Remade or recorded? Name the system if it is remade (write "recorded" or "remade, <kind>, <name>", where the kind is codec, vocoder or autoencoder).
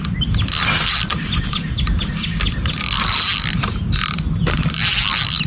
recorded